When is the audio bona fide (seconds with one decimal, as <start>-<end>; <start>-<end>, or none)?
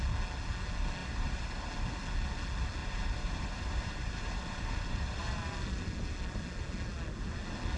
0.0-1.0; 1.7-2.8; 5.5-7.8